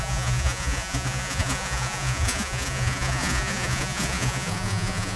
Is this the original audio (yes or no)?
no